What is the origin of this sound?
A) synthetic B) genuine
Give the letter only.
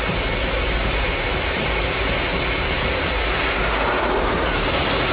B